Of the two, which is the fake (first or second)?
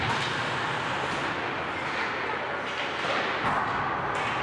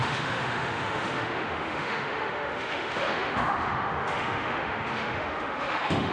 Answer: second